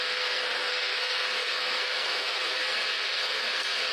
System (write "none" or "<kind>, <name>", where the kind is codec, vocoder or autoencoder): codec, SNAC